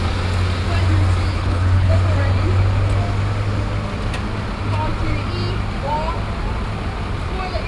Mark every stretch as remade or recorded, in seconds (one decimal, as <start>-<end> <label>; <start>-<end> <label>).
0.0-1.3 recorded; 1.3-1.9 remade; 1.9-7.7 recorded